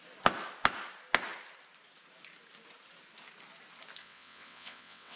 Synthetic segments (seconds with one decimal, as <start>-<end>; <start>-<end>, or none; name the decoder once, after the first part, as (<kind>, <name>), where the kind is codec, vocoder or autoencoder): 4.0-5.2 (vocoder, WaveNeXt)